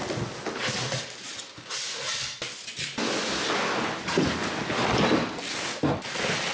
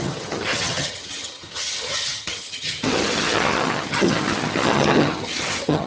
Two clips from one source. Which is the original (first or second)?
first